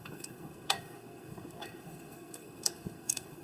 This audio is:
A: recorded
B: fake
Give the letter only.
B